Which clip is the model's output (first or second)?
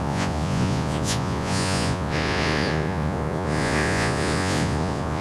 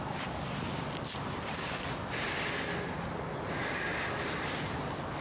first